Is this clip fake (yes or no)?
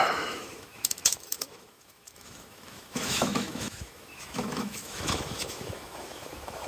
yes